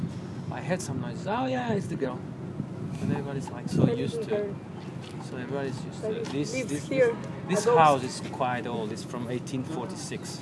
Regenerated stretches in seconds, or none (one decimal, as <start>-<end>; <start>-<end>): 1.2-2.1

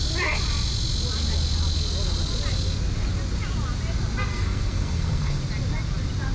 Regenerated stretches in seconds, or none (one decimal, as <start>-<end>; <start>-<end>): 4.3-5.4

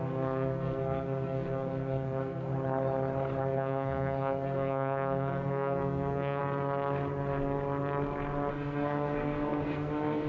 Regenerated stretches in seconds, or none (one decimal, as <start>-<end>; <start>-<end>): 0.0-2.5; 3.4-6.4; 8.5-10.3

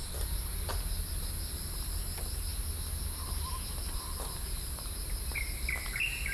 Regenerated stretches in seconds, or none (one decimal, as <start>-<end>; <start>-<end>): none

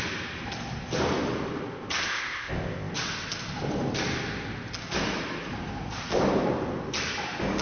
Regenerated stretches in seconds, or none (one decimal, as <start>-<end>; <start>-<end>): 2.1-2.9